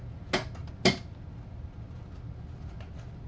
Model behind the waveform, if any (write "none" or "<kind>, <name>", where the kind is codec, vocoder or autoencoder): none